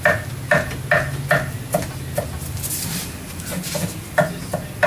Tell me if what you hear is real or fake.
real